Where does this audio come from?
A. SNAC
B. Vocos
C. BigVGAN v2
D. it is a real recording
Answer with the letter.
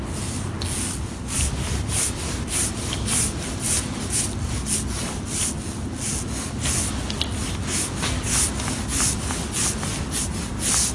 D